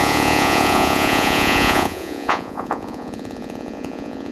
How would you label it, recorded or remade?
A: remade